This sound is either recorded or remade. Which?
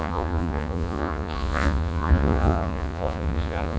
remade